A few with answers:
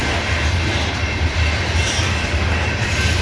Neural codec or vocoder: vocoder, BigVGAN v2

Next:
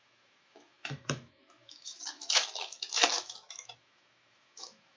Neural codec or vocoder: autoencoder, DAC-VAE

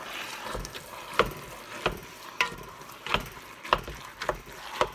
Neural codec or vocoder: vocoder, BigVGAN v2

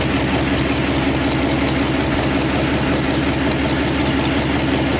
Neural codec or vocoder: none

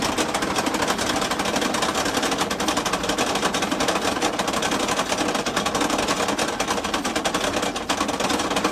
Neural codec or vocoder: none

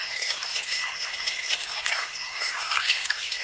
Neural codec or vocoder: codec, SNAC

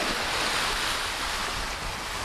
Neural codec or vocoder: none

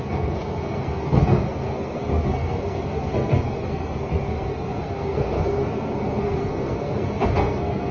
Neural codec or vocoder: codec, SNAC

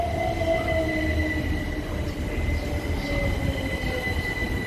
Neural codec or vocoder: none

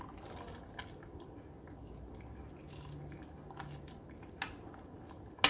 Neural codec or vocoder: none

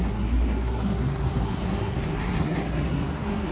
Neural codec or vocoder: codec, SNAC